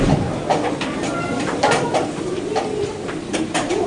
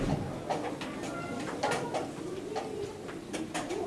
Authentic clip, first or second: second